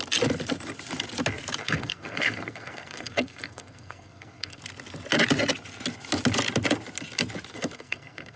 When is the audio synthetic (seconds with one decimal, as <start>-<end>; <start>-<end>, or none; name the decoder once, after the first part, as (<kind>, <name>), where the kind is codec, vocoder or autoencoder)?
1.6-4.6 (codec, SNAC); 7.5-8.4

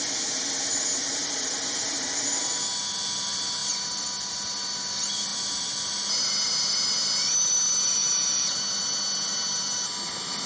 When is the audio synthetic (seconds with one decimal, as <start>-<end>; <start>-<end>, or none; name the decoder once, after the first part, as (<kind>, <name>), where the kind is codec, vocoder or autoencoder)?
none

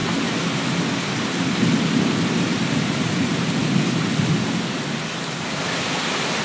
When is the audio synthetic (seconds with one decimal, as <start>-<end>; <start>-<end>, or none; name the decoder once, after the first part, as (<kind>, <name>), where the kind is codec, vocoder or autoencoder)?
2.5-4.2 (vocoder, BigVGAN v2)

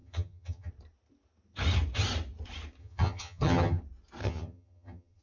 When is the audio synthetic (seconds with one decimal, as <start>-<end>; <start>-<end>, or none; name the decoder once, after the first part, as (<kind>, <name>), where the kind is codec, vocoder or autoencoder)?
0.0-0.7 (vocoder, HiFi-GAN); 2.8-3.8; 4.2-5.2